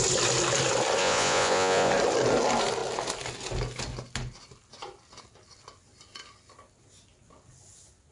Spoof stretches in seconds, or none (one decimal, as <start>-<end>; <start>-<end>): 1.0-1.9